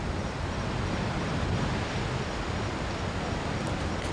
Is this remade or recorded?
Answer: recorded